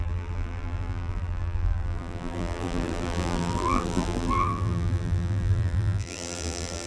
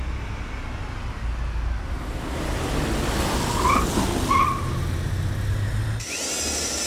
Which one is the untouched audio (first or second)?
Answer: second